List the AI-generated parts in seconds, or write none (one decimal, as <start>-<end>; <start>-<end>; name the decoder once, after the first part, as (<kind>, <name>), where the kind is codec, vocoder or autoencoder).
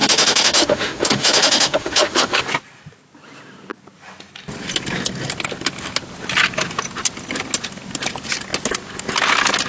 0.0-2.4 (autoencoder, DAC-VAE)